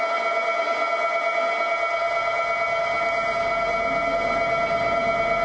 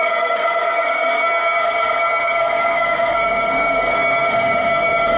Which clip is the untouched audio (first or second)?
first